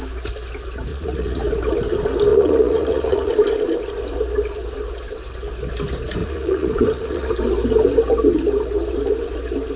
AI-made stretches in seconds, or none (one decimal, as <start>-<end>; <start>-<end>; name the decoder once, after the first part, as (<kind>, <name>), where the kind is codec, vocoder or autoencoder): 0.9-1.4 (vocoder, Vocos); 2.3-3.3; 6.2-7.3